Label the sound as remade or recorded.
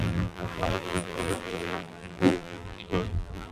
remade